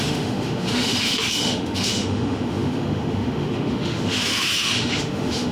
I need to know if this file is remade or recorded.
remade